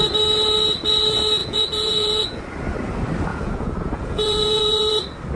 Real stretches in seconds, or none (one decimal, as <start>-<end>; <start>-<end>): 0.0-1.4; 2.4-3.3; 4.9-5.4